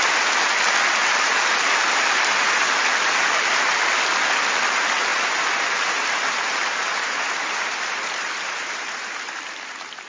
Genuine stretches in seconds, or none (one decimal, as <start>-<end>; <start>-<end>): 0.0-1.0; 2.6-5.1; 9.4-10.1